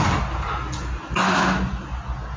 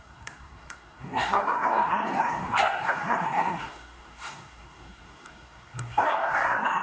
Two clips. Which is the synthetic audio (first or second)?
second